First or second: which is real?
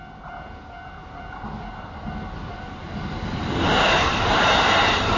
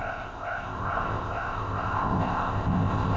first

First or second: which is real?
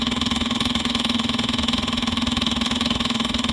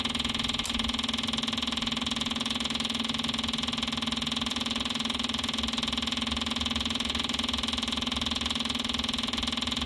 second